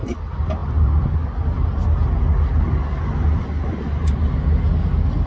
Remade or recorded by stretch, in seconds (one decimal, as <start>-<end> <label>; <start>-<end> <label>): 0.0-5.3 recorded